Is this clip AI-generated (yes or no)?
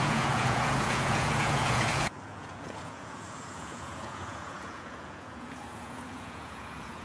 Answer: yes